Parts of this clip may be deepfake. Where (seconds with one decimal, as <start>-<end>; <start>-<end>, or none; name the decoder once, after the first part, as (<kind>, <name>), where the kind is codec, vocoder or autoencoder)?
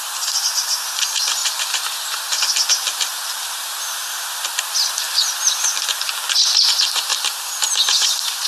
1.4-2.4 (vocoder, BigVGAN v2); 7.1-8.5